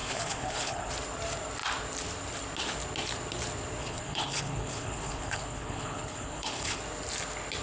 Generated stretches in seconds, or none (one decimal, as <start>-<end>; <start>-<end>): 0.0-0.9; 3.8-6.8